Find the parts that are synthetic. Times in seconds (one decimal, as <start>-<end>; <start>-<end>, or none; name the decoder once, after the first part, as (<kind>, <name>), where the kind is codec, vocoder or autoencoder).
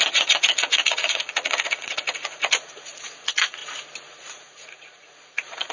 0.0-3.6 (vocoder, Vocos); 4.1-5.7